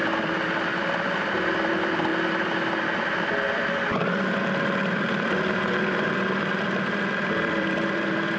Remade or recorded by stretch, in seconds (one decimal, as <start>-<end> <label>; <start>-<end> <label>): 0.0-2.1 remade; 2.1-3.0 recorded; 3.0-8.4 remade